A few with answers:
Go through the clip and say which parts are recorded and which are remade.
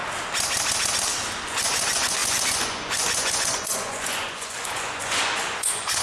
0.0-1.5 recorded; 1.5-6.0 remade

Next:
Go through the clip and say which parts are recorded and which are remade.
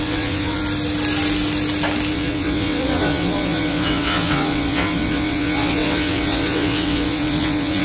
0.0-0.6 remade; 0.6-2.1 recorded; 2.1-7.8 remade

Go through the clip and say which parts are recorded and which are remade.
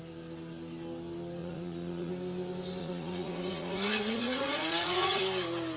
0.0-1.4 recorded; 1.4-2.1 remade; 2.1-2.8 recorded; 2.8-5.2 remade; 5.2-5.8 recorded